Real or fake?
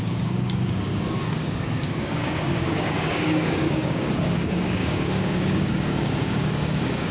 fake